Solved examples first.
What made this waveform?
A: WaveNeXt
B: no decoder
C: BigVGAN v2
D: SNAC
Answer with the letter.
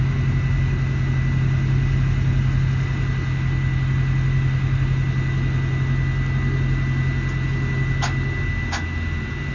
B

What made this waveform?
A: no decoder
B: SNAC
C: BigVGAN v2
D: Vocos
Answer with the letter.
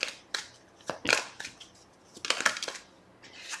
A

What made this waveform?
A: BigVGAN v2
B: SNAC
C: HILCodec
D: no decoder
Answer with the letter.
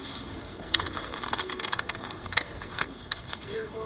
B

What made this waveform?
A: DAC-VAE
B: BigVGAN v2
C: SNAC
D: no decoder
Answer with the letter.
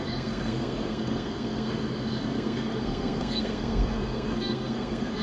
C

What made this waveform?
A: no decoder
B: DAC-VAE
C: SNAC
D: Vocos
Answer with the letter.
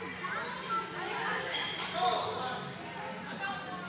A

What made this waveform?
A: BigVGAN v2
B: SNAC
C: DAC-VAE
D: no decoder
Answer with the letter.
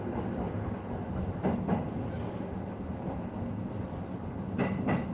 D